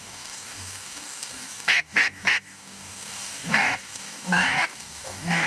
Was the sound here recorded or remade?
remade